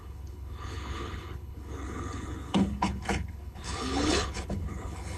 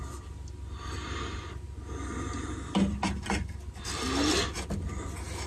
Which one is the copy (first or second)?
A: first